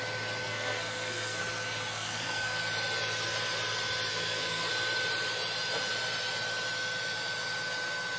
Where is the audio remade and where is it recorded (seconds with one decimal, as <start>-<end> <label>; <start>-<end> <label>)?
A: 0.0-0.4 recorded; 0.4-1.4 remade; 1.4-1.9 recorded; 1.9-2.6 remade; 2.6-4.1 recorded; 4.1-4.7 remade; 4.7-8.2 recorded

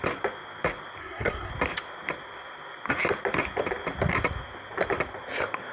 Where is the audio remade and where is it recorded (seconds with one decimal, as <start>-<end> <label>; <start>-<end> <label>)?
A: 0.0-1.0 recorded; 1.0-1.5 remade; 1.5-5.7 recorded

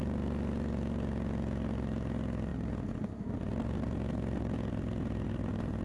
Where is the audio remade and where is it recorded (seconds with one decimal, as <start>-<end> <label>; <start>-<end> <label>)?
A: 0.0-5.8 recorded

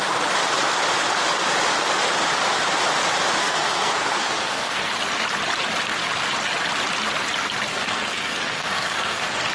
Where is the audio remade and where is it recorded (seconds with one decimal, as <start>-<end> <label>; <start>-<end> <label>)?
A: 0.0-3.4 recorded; 3.4-4.9 remade; 4.9-7.7 recorded; 7.7-9.5 remade

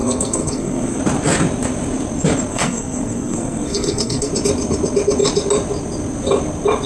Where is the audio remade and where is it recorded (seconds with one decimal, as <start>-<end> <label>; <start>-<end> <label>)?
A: 0.0-1.0 remade; 1.0-2.5 recorded; 2.5-4.3 remade; 4.3-6.9 recorded

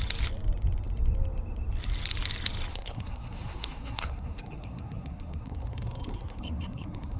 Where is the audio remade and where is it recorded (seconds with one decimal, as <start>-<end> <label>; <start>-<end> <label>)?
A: 0.0-2.7 recorded; 2.7-7.2 remade

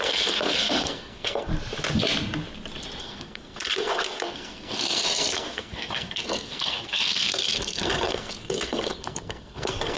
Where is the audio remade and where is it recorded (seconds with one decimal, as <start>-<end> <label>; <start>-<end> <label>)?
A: 0.0-1.5 remade; 1.5-3.0 recorded; 3.0-10.0 remade

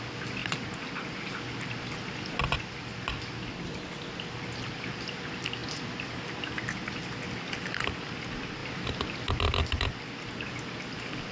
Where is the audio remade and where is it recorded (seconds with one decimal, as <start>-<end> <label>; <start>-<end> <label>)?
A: 0.0-11.3 recorded